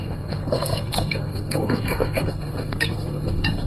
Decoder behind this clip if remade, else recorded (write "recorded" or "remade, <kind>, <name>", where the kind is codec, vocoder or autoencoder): remade, codec, SNAC